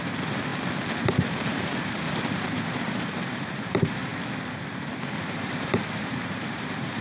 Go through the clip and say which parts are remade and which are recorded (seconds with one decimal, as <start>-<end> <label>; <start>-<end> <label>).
0.0-0.5 remade; 0.5-1.1 recorded; 1.1-4.1 remade; 4.1-4.8 recorded; 4.8-7.0 remade